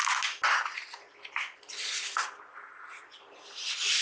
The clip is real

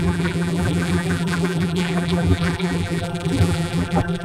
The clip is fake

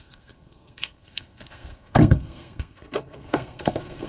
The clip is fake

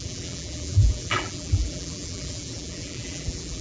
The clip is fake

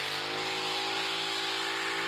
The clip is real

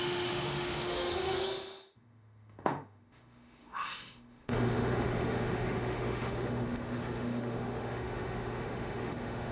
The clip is fake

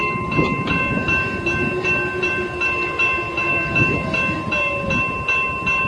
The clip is fake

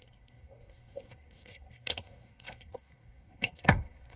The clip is fake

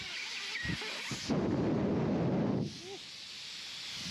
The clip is real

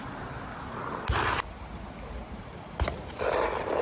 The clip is real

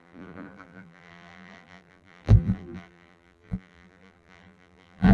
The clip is fake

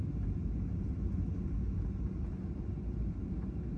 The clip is fake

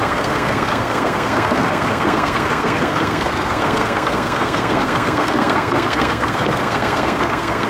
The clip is fake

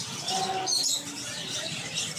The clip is real